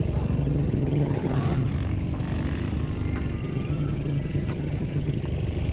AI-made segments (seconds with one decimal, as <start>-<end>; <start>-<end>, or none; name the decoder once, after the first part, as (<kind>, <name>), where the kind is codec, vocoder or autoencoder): 0.4-1.7 (vocoder, HiFi-GAN); 3.4-5.2